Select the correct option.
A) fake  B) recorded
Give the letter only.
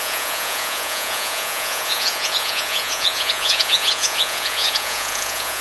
A